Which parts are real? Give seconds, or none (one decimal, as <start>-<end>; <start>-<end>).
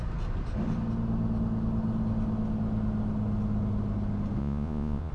0.0-4.4